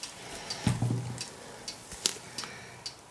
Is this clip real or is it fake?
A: real